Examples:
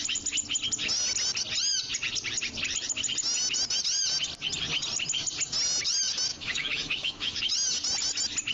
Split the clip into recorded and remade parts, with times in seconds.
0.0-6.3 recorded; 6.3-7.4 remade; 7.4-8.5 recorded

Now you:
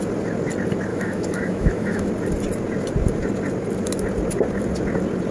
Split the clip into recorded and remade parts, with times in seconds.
0.0-0.9 recorded; 0.9-2.1 remade; 2.1-5.3 recorded

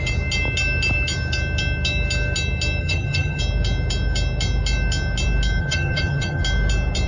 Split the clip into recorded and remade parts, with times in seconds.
0.0-2.8 recorded; 2.8-3.4 remade; 3.4-5.6 recorded; 5.6-6.4 remade; 6.4-7.1 recorded

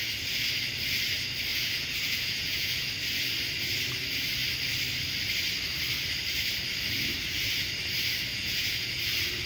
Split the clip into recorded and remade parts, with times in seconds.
0.0-1.5 recorded; 1.5-2.9 remade; 2.9-8.3 recorded; 8.3-9.0 remade; 9.0-9.5 recorded

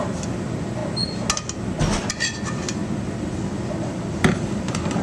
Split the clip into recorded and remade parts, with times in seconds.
0.0-0.8 remade; 0.8-2.1 recorded; 2.1-5.0 remade

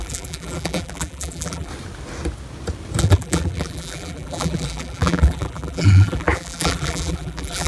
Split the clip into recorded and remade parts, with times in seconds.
0.0-1.7 remade; 1.7-3.0 recorded; 3.0-7.7 remade

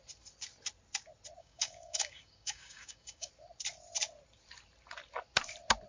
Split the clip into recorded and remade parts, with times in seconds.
0.0-1.4 recorded; 1.4-3.3 remade; 3.3-5.9 recorded

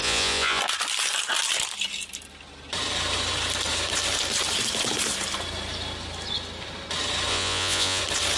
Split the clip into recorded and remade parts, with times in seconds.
0.0-0.6 remade; 0.6-7.3 recorded; 7.3-8.0 remade; 8.0-8.4 recorded